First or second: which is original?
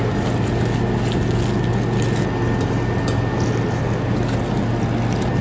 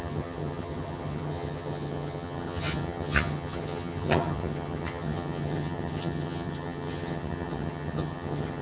first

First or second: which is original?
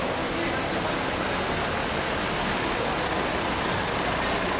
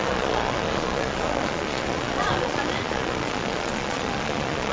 first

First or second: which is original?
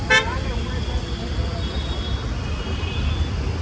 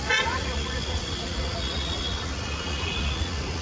first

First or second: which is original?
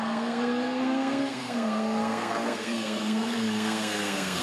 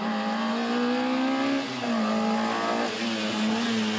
second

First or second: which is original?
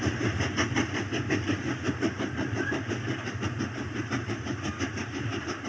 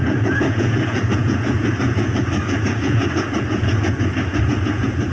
first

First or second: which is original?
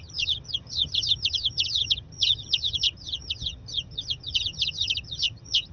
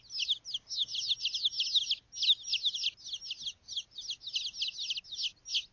second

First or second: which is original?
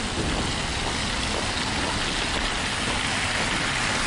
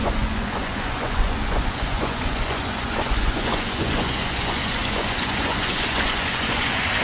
first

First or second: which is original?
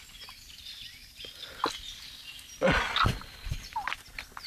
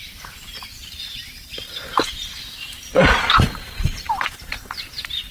first